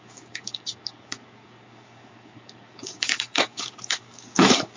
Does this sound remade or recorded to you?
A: remade